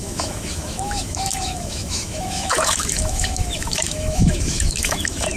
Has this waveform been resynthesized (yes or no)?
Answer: yes